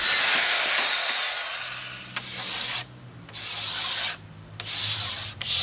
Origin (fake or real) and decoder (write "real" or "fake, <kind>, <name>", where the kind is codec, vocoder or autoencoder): real